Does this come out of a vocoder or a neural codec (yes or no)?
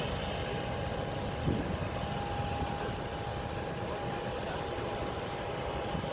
no